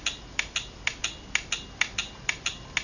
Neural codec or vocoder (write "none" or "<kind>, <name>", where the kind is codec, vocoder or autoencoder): none